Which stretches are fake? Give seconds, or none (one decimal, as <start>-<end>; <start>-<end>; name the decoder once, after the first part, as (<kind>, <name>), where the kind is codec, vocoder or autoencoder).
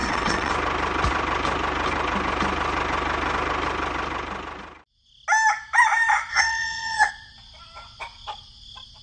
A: 0.0-0.5 (vocoder, WaveNeXt); 6.3-7.1